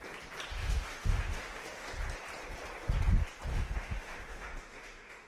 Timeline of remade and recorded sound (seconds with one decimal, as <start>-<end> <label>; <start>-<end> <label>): 0.0-0.6 recorded; 0.6-1.9 remade; 1.9-3.5 recorded; 3.5-5.3 remade